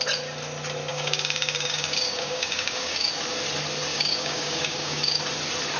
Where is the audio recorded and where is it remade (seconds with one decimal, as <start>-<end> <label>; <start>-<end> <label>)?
0.0-0.9 recorded; 0.9-3.1 remade; 3.1-3.9 recorded; 3.9-5.2 remade; 5.2-5.8 recorded